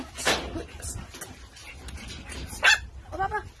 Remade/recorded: recorded